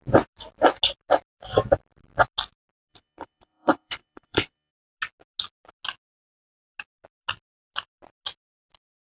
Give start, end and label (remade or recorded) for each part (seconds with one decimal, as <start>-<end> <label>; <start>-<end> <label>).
0.0-2.9 recorded; 2.9-4.7 remade; 4.7-9.2 recorded